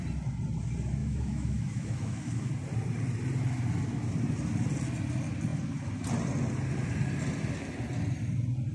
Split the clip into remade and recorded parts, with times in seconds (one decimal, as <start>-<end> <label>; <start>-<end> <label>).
0.0-1.0 recorded; 1.0-2.5 remade; 2.5-8.7 recorded